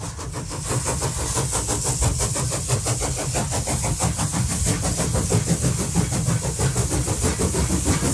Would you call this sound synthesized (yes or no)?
no